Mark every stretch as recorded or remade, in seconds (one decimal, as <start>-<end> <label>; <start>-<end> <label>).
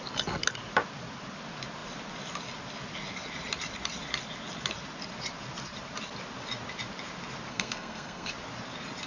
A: 0.0-7.5 recorded; 7.5-8.3 remade; 8.3-9.1 recorded